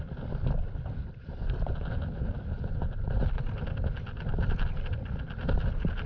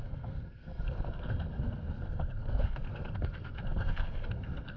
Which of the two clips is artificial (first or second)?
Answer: second